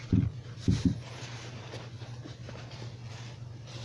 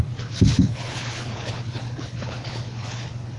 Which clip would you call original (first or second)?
first